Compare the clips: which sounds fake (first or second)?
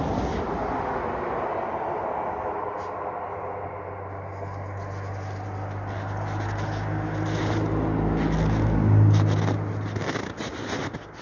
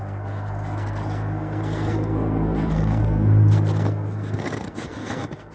second